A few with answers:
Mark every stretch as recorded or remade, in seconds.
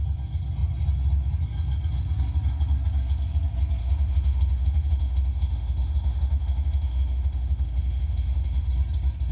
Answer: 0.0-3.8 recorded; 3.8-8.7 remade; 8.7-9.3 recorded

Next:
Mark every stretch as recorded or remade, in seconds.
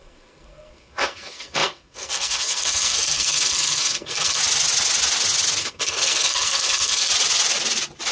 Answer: 0.0-4.4 remade; 4.4-5.6 recorded; 5.6-7.1 remade; 7.1-8.1 recorded